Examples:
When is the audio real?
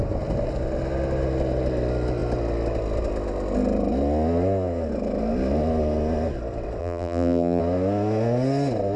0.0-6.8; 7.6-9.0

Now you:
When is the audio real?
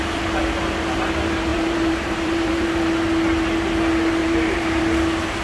0.0-1.5; 2.8-4.2; 4.8-5.4